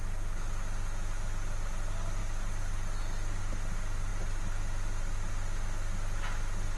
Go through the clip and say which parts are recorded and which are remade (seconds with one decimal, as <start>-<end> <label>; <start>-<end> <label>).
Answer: 0.0-6.8 recorded